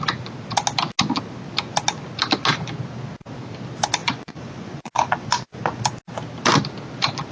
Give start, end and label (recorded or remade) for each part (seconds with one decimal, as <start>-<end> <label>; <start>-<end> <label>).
0.0-4.0 recorded; 4.0-5.8 remade; 5.8-7.3 recorded